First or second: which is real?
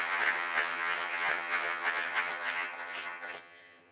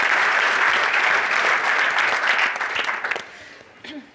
second